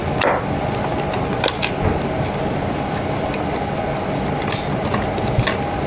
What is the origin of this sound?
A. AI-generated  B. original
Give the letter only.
B